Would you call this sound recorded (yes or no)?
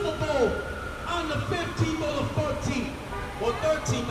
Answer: yes